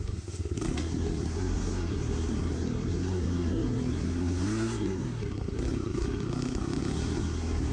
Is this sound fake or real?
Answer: fake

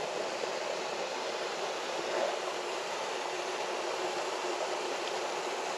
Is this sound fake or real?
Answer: fake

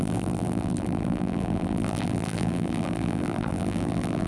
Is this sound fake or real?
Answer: fake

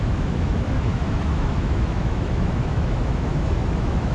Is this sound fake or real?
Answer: fake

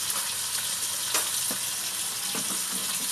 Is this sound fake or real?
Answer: real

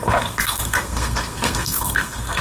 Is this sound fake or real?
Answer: fake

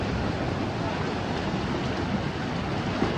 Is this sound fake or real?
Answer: real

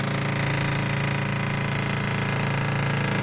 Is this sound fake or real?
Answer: real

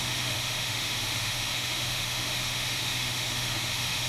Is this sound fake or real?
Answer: fake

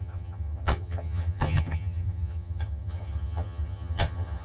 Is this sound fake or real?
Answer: fake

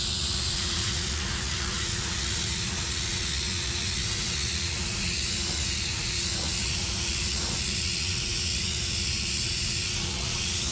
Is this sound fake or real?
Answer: fake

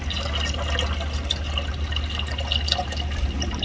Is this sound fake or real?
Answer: real